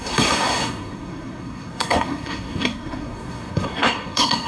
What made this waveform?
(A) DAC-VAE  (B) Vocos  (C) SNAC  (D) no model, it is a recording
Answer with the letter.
C